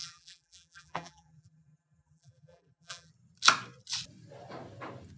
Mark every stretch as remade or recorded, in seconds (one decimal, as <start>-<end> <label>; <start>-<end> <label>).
0.0-3.1 remade; 3.1-5.2 recorded